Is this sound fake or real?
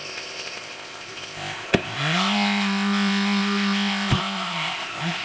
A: fake